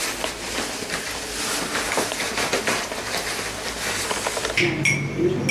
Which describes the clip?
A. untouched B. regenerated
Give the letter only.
A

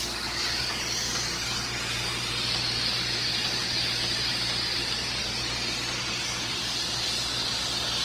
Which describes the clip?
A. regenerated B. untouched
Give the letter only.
B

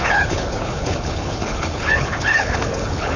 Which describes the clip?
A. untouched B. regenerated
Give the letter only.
B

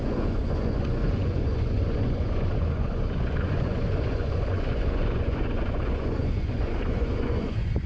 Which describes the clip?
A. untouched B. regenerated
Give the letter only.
B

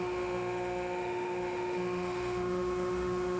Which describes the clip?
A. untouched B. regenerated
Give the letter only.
B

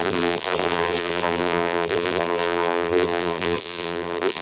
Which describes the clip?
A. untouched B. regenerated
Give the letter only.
B